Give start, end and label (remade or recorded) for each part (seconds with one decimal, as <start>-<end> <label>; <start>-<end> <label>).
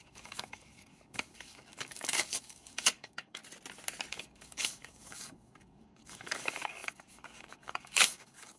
0.0-3.4 remade; 3.4-4.1 recorded; 4.1-8.6 remade